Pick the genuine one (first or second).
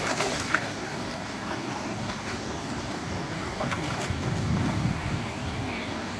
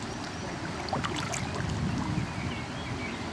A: second